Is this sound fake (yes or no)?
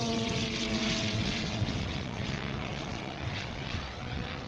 yes